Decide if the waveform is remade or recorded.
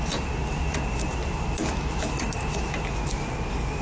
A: recorded